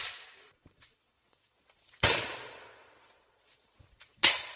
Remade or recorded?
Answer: remade